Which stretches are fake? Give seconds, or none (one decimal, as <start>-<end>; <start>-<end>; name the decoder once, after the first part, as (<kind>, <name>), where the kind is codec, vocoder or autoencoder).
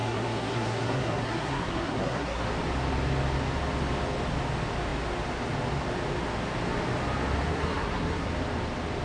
0.0-2.4 (codec, SNAC); 7.5-8.3